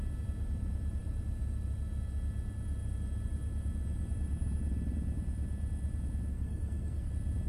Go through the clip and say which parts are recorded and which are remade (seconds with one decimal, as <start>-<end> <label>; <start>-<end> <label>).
0.0-6.3 recorded; 6.3-7.1 remade; 7.1-7.5 recorded